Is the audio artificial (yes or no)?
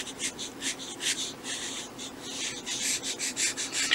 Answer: no